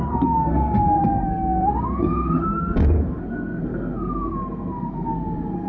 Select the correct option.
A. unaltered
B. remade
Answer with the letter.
B